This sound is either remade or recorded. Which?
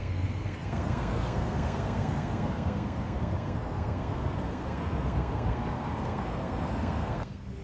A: remade